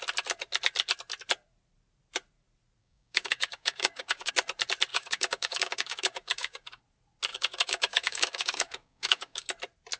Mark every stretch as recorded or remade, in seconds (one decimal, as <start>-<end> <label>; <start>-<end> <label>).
0.0-2.8 recorded; 2.8-4.3 remade; 4.3-4.9 recorded; 4.9-6.8 remade; 6.8-7.3 recorded; 7.3-9.5 remade; 9.5-10.0 recorded